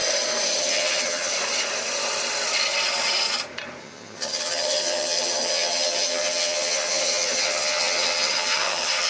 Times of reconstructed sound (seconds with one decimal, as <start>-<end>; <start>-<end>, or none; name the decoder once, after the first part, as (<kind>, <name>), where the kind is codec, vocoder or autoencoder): 0.6-1.3 (vocoder, HiFi-GAN); 3.8-9.1

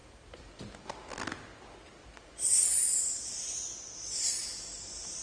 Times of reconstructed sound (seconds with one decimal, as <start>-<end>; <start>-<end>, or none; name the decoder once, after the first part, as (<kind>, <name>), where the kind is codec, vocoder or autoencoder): none

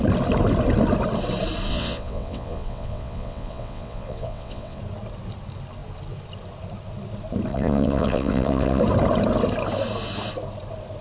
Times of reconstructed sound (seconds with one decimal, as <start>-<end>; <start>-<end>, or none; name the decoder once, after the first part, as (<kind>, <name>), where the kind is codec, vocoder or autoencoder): 1.7-4.8 (vocoder, WaveNeXt); 7.5-8.8

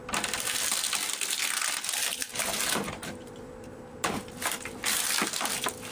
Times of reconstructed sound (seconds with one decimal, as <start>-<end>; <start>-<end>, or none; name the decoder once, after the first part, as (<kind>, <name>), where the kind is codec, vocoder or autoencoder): 2.3-5.0 (vocoder, BigVGAN v2)

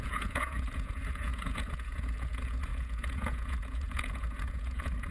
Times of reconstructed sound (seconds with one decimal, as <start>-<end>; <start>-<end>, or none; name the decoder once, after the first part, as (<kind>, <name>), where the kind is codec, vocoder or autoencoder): 0.0-5.1 (vocoder, Vocos)

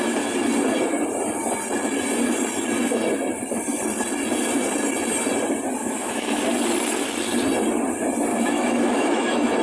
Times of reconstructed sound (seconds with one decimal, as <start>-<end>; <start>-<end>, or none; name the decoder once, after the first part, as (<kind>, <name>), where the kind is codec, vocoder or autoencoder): 5.8-6.4 (autoencoder, DAC-VAE); 8.3-9.6

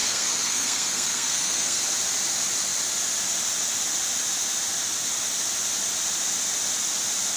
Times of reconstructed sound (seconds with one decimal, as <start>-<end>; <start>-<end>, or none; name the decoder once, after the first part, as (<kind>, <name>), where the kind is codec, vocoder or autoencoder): 0.0-1.8 (codec, SNAC)

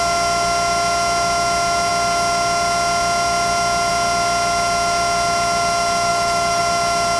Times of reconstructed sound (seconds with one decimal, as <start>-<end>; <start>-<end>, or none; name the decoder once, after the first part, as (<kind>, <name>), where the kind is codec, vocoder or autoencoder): 6.1-6.6 (vocoder, BigVGAN v2)